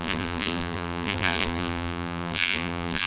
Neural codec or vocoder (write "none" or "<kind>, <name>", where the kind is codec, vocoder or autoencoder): vocoder, BigVGAN v2